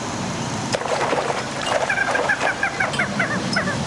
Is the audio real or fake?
fake